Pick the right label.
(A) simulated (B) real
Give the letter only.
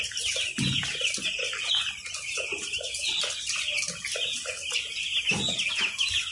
B